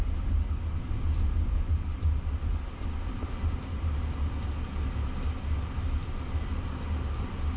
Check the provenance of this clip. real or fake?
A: real